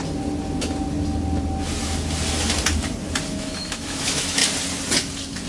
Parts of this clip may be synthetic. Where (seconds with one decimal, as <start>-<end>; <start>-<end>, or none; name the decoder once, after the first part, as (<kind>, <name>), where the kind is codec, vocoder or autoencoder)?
3.3-4.4 (autoencoder, DAC-VAE)